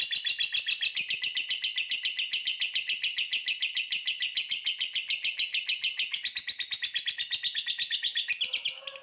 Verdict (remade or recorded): recorded